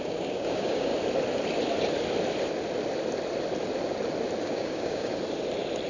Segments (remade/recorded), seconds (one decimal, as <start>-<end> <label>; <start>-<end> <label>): 0.0-0.9 remade; 0.9-4.4 recorded; 4.4-5.1 remade; 5.1-5.9 recorded